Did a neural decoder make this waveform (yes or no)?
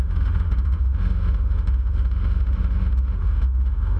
yes